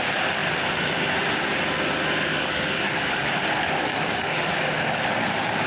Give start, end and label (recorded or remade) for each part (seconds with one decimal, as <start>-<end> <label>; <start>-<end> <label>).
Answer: 0.0-2.3 recorded; 2.3-3.4 remade; 3.4-3.9 recorded; 3.9-4.7 remade; 4.7-5.7 recorded